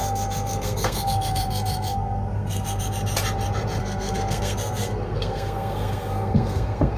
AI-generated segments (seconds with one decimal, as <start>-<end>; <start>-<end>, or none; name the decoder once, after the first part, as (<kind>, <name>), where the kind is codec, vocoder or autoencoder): 0.0-2.8 (codec, SNAC); 3.8-7.0